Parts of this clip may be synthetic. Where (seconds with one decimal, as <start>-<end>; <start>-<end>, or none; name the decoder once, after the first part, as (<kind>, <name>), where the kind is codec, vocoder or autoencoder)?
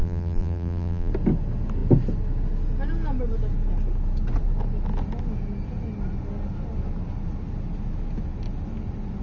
0.0-1.1 (vocoder, BigVGAN v2)